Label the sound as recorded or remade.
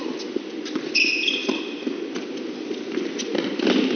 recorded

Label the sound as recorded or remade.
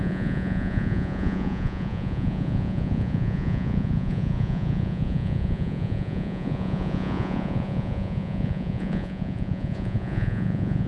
remade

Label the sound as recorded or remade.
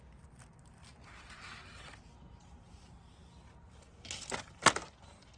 recorded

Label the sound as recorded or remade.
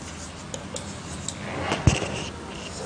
recorded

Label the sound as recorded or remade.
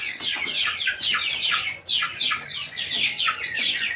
remade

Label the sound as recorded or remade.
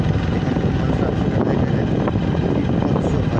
recorded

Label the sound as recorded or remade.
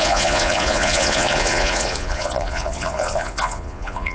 remade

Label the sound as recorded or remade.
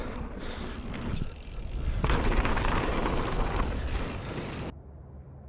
recorded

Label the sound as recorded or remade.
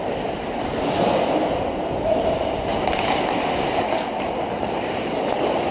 recorded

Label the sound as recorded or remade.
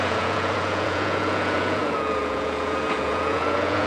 remade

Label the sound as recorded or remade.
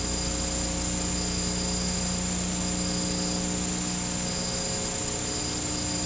recorded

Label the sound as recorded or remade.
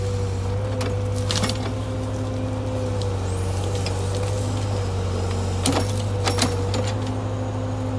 recorded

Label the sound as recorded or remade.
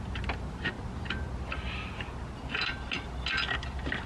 recorded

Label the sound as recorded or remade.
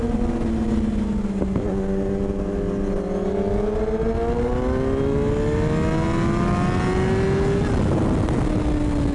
recorded